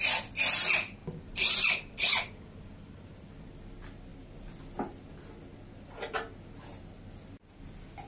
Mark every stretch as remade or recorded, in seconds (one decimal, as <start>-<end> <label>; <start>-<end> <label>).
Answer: 0.0-1.0 recorded; 1.0-3.5 remade; 3.5-4.1 recorded; 4.1-5.2 remade; 5.2-8.1 recorded